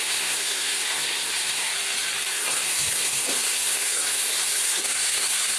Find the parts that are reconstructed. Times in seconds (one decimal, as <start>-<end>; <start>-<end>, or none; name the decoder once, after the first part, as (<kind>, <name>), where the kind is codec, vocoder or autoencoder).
0.0-1.7 (codec, SNAC); 2.3-5.6